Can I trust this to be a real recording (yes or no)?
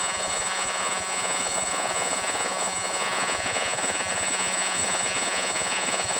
no